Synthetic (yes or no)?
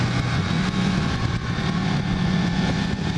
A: yes